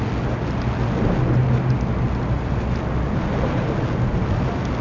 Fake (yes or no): no